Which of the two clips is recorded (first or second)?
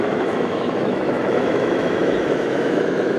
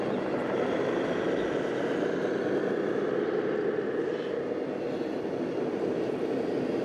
second